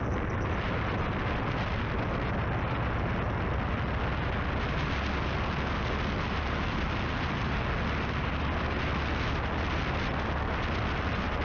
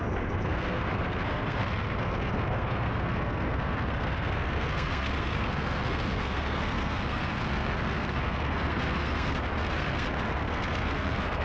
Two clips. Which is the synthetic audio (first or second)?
second